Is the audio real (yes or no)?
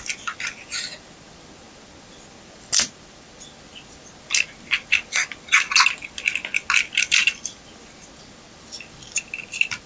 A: yes